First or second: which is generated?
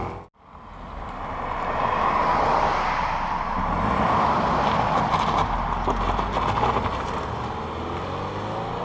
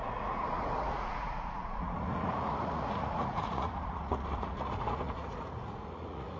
second